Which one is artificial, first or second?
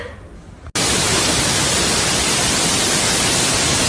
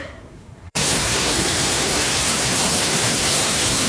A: second